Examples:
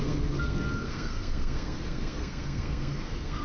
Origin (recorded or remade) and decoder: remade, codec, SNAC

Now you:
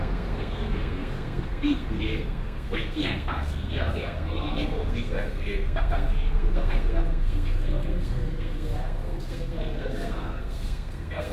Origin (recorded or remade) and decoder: remade, codec, SNAC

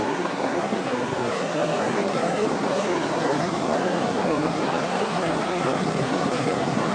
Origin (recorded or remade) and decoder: remade, codec, SNAC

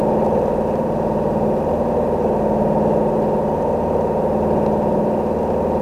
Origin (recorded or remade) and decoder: recorded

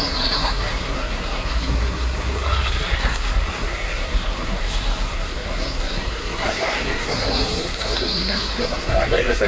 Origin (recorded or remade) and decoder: remade, codec, SNAC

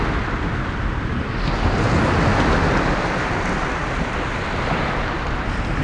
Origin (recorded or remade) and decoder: recorded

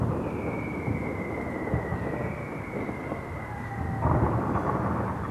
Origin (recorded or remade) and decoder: recorded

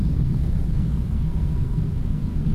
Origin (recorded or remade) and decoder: remade, codec, SNAC